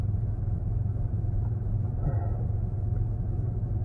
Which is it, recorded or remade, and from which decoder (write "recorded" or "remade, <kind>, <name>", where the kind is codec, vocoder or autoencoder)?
remade, vocoder, BigVGAN v2